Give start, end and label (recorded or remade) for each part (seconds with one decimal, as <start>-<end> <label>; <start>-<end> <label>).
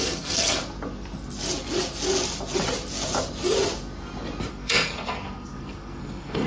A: 0.0-0.6 remade; 0.6-4.5 recorded; 4.5-6.5 remade